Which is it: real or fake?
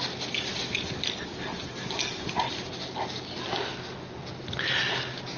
real